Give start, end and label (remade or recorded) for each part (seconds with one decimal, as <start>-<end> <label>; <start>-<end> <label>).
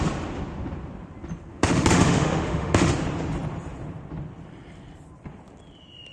0.0-1.5 recorded; 1.5-2.9 remade; 2.9-6.1 recorded